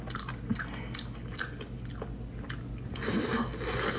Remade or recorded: recorded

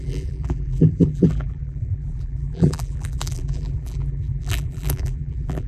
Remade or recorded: remade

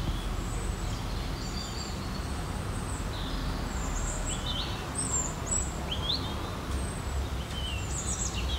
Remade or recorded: recorded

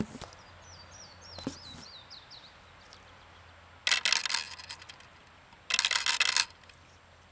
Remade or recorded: recorded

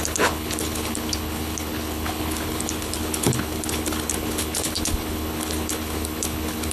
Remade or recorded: remade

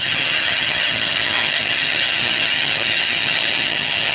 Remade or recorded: remade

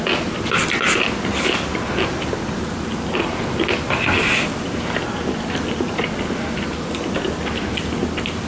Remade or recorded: recorded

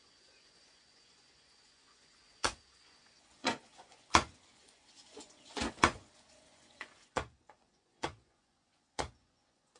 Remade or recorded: remade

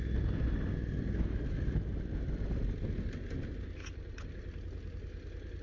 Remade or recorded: recorded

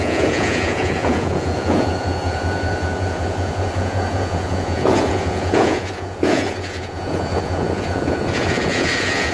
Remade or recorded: remade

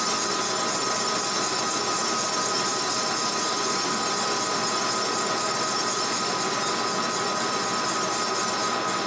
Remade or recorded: remade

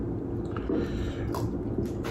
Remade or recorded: recorded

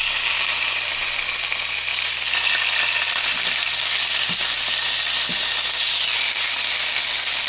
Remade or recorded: recorded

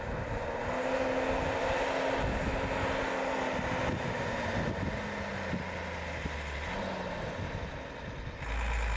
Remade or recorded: recorded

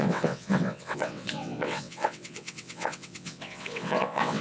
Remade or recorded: remade